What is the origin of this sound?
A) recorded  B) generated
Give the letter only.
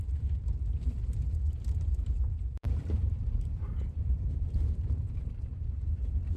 B